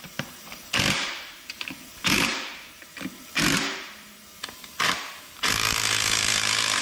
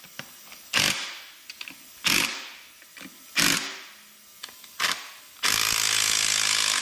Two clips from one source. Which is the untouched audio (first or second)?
second